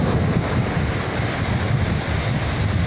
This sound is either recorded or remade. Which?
recorded